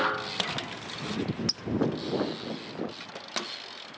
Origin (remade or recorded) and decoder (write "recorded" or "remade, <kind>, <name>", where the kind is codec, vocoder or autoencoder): recorded